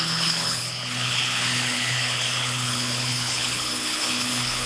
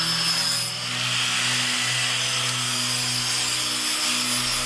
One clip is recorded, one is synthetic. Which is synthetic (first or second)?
first